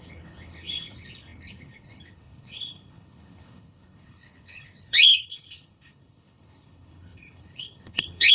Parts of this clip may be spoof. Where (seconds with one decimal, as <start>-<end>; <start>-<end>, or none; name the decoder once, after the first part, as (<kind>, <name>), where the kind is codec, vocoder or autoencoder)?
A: 0.0-8.3 (codec, HILCodec)